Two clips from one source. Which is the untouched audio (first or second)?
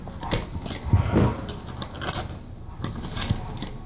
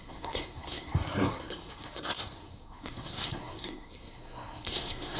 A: first